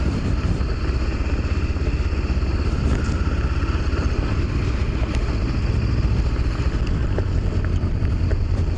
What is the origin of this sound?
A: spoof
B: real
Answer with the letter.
B